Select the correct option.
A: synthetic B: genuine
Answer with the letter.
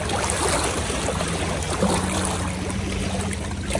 B